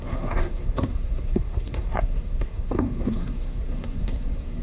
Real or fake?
fake